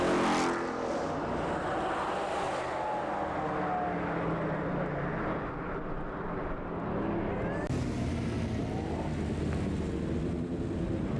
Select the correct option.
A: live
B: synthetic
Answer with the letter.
A